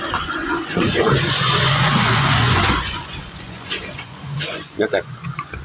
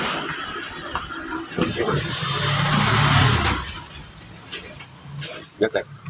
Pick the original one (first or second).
second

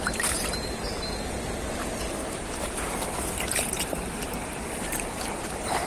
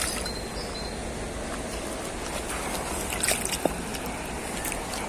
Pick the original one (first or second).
second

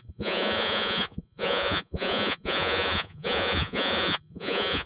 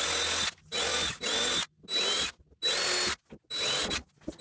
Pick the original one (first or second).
second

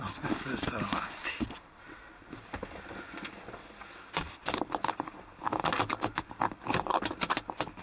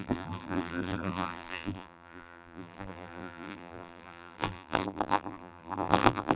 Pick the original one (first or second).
first